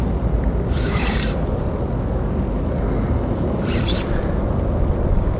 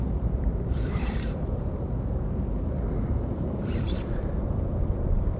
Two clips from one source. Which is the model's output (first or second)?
second